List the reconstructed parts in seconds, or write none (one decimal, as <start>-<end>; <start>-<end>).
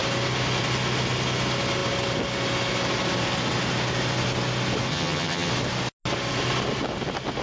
4.9-5.5